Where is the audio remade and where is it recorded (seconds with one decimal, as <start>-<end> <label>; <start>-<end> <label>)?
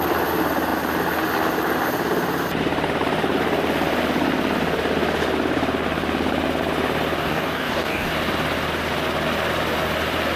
0.0-7.2 recorded; 7.2-8.1 remade; 8.1-10.4 recorded